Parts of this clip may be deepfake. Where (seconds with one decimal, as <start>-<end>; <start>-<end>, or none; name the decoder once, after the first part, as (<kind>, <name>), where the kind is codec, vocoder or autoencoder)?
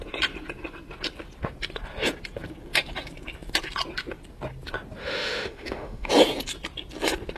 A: 5.0-6.1 (autoencoder, DAC-VAE)